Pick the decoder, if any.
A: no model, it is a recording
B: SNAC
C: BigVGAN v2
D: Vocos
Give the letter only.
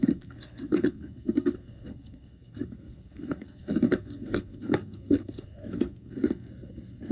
B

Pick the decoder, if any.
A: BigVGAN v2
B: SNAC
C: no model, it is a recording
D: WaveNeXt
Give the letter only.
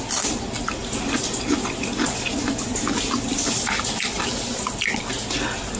C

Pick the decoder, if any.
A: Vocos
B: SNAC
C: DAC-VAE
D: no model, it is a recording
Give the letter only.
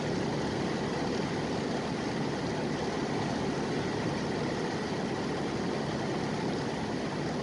D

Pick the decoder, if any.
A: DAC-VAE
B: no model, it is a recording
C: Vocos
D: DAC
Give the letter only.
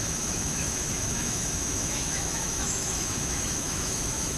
A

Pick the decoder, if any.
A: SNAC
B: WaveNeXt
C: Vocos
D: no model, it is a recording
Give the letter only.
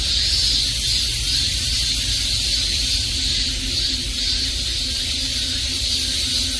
D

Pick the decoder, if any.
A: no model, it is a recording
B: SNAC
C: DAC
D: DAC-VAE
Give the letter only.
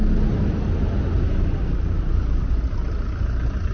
A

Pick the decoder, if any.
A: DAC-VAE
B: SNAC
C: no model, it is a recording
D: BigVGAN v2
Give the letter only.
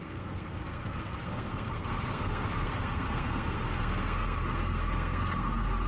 B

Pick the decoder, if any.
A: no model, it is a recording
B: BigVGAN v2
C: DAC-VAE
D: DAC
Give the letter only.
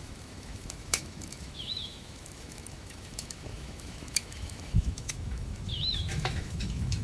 C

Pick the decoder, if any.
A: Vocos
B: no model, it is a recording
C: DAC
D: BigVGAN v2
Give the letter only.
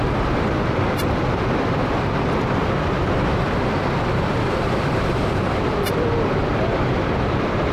D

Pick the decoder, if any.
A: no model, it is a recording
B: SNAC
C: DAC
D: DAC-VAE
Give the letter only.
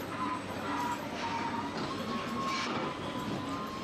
A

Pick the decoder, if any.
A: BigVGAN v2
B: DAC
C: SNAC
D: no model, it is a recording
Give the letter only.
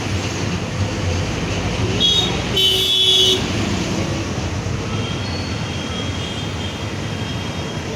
D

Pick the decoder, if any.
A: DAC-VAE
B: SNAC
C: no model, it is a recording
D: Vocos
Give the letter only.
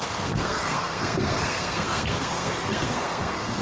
B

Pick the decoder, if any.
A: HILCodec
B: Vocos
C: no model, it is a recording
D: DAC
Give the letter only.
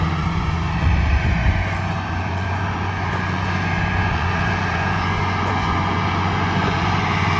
B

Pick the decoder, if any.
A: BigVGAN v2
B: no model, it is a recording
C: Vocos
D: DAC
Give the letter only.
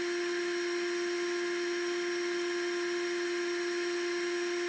B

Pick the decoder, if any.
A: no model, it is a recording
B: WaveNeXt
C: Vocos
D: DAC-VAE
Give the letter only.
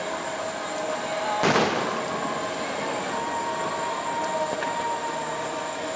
A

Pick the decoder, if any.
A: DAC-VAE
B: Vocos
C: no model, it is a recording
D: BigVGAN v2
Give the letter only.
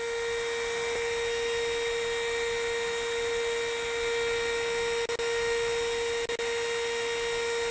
C